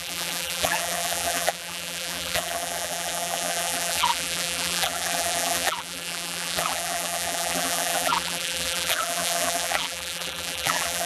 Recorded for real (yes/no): no